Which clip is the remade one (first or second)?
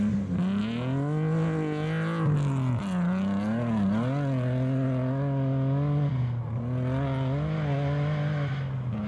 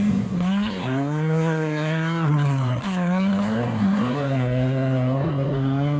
second